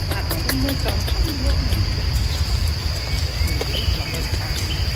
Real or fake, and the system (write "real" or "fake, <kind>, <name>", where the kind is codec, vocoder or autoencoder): real